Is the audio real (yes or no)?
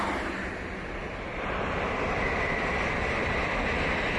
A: yes